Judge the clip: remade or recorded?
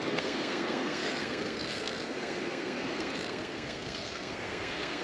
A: remade